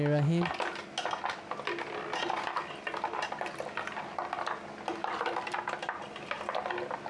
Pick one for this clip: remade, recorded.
recorded